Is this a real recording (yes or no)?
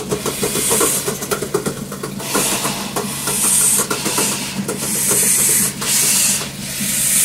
yes